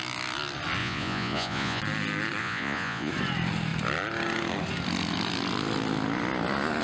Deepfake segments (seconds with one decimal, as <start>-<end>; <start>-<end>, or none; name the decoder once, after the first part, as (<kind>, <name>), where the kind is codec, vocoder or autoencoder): 0.8-1.8 (vocoder, Vocos); 2.4-3.1